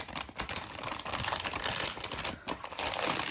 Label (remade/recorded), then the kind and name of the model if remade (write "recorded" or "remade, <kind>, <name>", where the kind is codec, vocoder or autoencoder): recorded